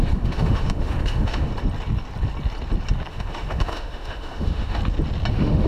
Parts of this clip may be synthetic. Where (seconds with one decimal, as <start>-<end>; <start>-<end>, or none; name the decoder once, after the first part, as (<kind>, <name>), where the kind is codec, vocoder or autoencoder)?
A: 0.0-1.5 (autoencoder, DAC-VAE); 3.1-4.8; 5.3-5.7